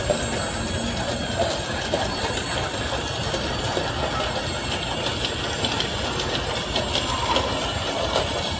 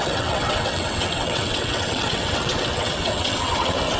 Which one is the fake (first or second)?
second